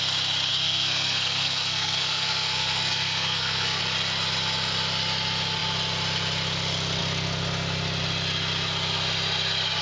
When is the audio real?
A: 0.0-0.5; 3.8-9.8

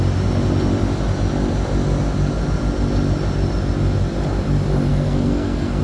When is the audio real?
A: 0.0-4.9

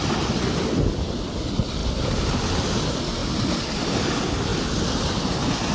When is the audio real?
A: 0.0-5.7

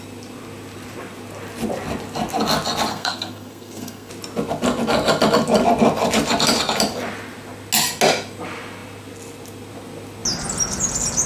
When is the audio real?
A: 0.0-2.9; 4.1-11.3

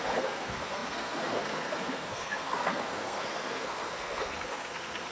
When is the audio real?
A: none

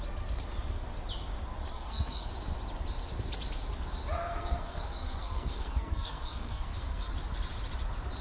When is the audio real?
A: 0.0-1.7; 2.3-4.2; 7.1-8.2

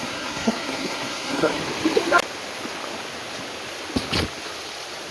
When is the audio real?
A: 1.6-5.1